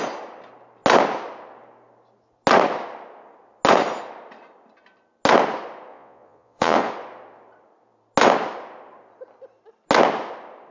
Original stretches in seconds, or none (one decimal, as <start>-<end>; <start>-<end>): 0.0-5.9; 6.9-10.7